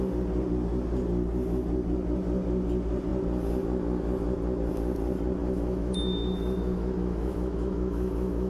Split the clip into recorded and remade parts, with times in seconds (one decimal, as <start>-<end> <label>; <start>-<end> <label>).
0.0-5.4 recorded; 5.4-8.5 remade